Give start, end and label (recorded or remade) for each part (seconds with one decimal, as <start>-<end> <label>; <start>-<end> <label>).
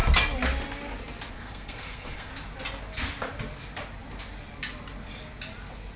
0.0-1.3 recorded; 1.3-2.3 remade; 2.3-6.0 recorded